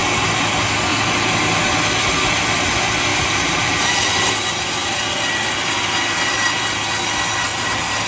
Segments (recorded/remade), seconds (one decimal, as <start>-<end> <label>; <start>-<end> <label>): 0.0-3.1 recorded; 3.1-4.3 remade; 4.3-7.5 recorded; 7.5-8.1 remade